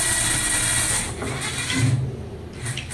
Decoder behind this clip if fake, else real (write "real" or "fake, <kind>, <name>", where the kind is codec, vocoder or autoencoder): real